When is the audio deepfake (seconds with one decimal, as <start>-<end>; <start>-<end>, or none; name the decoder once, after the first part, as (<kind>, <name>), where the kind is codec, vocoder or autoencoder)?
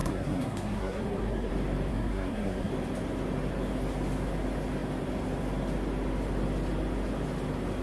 0.0-1.5 (codec, SNAC); 1.9-2.7